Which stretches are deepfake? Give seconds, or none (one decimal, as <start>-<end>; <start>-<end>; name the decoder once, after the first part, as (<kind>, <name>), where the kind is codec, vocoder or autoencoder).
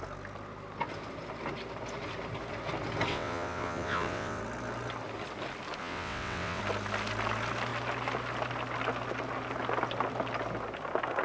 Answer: 3.1-4.4 (vocoder, WaveNeXt); 5.8-6.6